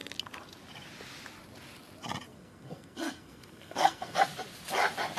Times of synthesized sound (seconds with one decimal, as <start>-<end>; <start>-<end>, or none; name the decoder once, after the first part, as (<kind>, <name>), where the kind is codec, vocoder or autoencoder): 2.3-4.2 (codec, SNAC)